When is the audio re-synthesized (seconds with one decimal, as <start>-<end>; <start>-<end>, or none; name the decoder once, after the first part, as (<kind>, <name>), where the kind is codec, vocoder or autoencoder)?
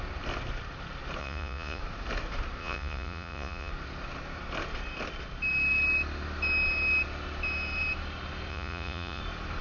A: 1.2-1.8 (vocoder, Vocos); 2.6-3.7; 8.5-9.2